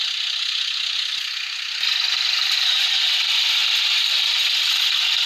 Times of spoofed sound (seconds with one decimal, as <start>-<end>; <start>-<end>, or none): none